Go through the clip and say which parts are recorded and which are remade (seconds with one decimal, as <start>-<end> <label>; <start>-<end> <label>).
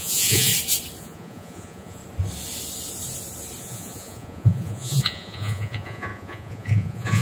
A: 0.0-0.5 remade; 0.5-1.0 recorded; 1.0-2.0 remade; 2.0-3.6 recorded; 3.6-7.2 remade